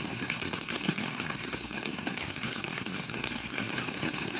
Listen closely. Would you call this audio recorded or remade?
remade